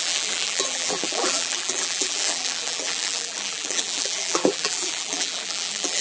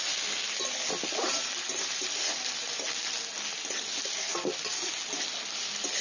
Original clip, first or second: second